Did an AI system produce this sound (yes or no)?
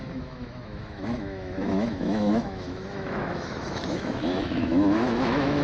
yes